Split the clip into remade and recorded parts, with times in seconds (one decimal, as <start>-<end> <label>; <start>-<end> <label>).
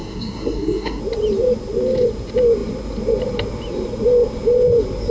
0.0-1.0 remade; 1.0-5.1 recorded